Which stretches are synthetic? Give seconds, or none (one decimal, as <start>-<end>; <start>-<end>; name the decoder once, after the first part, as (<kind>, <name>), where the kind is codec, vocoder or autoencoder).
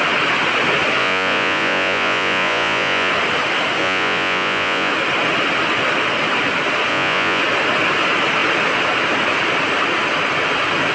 1.0-3.1 (vocoder, Vocos); 3.8-4.9; 6.9-7.4